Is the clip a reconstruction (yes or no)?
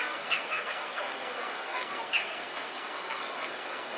yes